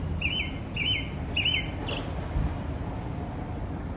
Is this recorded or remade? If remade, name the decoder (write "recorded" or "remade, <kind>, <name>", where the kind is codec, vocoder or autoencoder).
recorded